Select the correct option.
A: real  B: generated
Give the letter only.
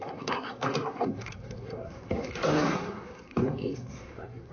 B